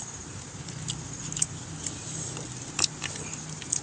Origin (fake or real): real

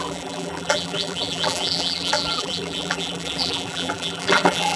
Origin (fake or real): fake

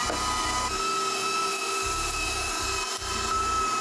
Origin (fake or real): real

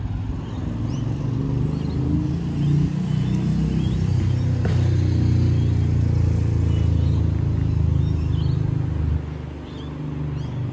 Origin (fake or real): real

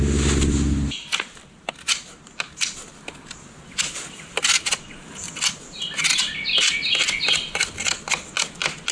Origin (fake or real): real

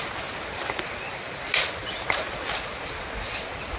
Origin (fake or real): real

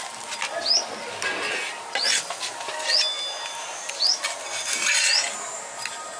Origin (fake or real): real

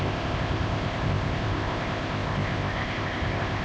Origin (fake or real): fake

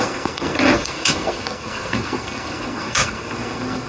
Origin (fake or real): fake